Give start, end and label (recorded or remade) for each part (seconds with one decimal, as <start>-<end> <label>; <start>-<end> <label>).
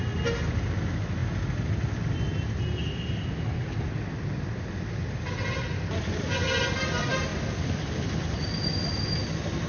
0.0-9.7 recorded